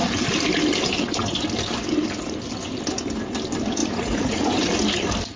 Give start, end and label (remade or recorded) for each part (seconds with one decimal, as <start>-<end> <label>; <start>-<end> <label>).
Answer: 0.0-3.8 recorded; 3.8-4.7 remade; 4.7-5.4 recorded